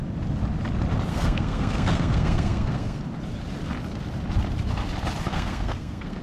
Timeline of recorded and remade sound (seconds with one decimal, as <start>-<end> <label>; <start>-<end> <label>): 0.0-1.1 recorded; 1.1-3.0 remade; 3.0-5.3 recorded; 5.3-6.2 remade